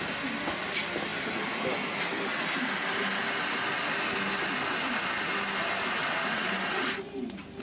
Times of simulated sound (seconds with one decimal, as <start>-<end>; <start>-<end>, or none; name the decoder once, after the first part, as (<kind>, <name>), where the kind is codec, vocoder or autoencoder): 6.0-6.9 (vocoder, WaveNeXt)